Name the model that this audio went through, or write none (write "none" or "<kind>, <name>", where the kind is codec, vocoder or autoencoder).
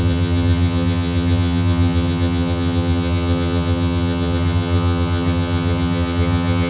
vocoder, HiFi-GAN